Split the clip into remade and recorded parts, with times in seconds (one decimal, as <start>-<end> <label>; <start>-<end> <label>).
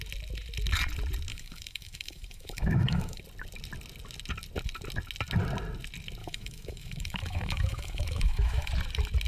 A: 0.0-1.3 recorded; 1.3-3.2 remade; 3.2-6.2 recorded; 6.2-8.7 remade; 8.7-9.3 recorded